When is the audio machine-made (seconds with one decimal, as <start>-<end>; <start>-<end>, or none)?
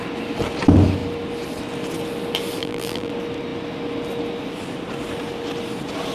2.6-3.1